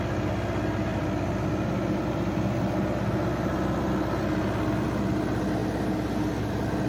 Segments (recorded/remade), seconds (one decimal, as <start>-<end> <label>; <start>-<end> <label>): 0.0-6.9 recorded